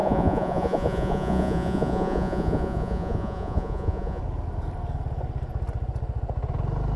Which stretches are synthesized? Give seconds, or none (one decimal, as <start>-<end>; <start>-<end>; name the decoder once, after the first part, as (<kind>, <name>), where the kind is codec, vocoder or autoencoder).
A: 0.0-4.2 (vocoder, Vocos)